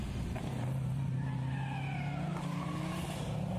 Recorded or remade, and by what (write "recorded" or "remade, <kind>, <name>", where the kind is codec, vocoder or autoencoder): recorded